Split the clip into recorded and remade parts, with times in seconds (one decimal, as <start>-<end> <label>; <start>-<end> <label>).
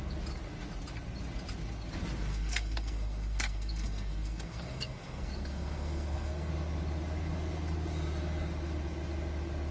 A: 0.0-2.3 recorded; 2.3-6.5 remade; 6.5-9.7 recorded